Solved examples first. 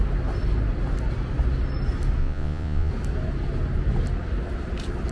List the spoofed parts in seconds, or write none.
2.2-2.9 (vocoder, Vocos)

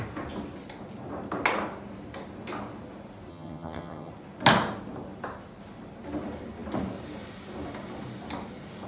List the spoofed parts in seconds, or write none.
3.3-4.1 (vocoder, HiFi-GAN)

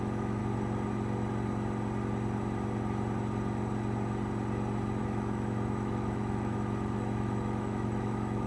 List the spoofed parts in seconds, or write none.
0.0-0.4 (autoencoder, DAC-VAE); 5.0-8.5